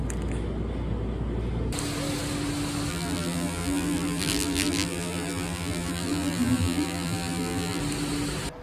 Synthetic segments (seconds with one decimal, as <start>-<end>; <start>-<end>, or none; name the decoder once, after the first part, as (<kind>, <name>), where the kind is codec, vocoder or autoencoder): 2.9-7.8 (vocoder, BigVGAN v2)